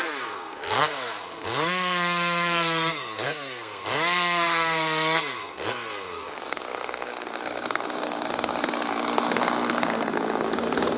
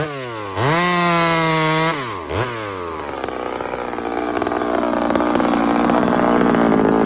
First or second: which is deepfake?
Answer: first